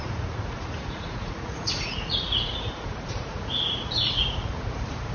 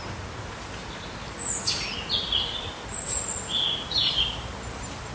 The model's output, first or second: first